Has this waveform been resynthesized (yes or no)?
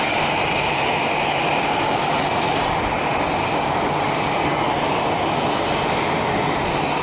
no